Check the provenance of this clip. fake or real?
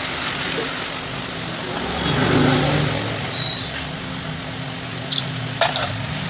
real